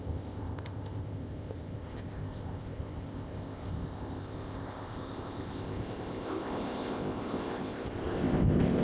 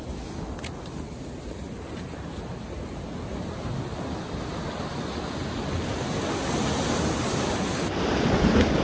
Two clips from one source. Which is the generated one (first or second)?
first